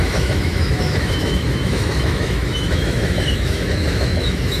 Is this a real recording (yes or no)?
no